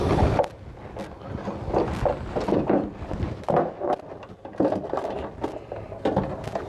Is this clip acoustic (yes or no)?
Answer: yes